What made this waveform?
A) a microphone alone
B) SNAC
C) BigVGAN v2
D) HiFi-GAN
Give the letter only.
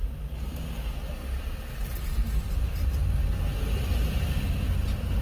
A